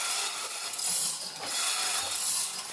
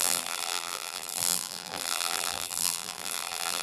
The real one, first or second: first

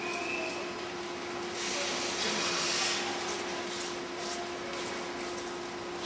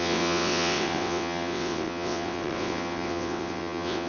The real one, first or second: first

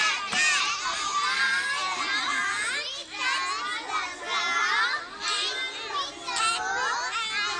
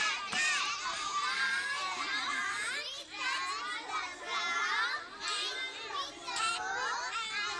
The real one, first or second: first